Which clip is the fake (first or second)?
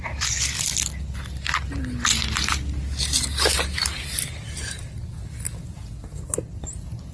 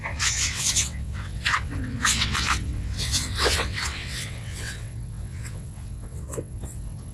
second